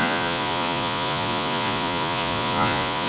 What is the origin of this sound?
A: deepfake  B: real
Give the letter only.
A